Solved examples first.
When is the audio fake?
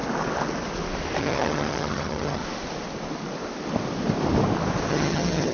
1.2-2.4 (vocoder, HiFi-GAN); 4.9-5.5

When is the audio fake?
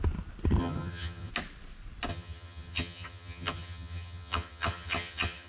0.6-1.3 (vocoder, HiFi-GAN); 2.1-5.5